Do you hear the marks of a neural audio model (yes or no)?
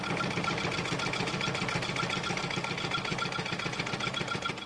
no